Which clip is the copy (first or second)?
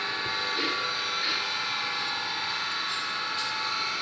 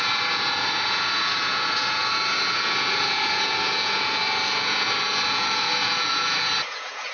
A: second